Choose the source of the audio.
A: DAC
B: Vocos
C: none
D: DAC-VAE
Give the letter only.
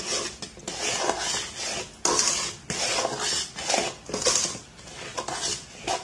C